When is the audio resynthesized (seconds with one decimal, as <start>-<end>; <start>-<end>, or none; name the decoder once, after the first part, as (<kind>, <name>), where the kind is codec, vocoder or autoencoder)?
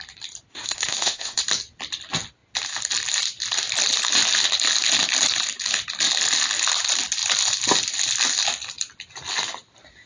0.5-1.4 (autoencoder, DAC-VAE)